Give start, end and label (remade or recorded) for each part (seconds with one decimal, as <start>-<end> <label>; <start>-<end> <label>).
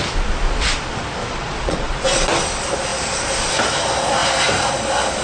0.0-1.2 recorded; 1.2-1.9 remade; 1.9-5.2 recorded